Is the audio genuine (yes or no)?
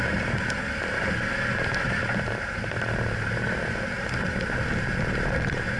yes